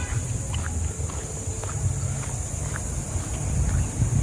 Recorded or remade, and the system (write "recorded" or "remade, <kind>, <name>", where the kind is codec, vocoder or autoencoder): recorded